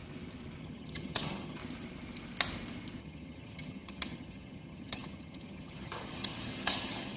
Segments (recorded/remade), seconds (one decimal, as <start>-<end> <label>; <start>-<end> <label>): 0.0-0.6 recorded; 0.6-1.6 remade; 1.6-3.0 recorded; 3.0-7.2 remade